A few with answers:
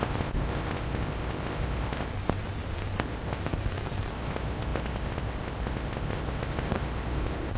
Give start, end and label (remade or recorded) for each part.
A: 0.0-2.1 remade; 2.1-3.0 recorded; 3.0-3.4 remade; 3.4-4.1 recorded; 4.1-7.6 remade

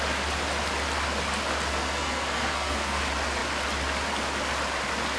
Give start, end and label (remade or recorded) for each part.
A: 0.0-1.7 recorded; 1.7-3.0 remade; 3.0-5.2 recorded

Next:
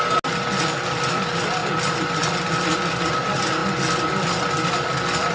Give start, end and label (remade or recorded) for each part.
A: 0.0-5.3 recorded

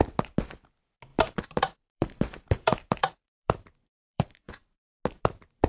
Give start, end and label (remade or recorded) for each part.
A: 0.0-1.1 recorded; 1.1-4.5 remade; 4.5-5.7 recorded

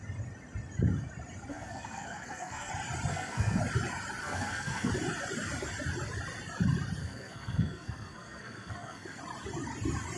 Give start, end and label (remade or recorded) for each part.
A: 0.0-1.5 recorded; 1.5-2.7 remade; 2.7-3.1 recorded; 3.1-3.6 remade; 3.6-4.2 recorded; 4.2-4.9 remade; 4.9-7.0 recorded; 7.0-9.2 remade; 9.2-10.2 recorded

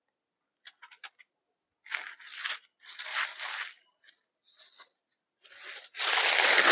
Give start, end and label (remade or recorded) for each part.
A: 0.0-6.7 recorded